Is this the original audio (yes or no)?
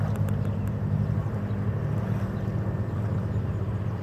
yes